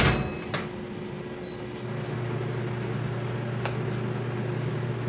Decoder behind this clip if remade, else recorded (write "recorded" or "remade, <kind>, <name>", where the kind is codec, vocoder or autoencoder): recorded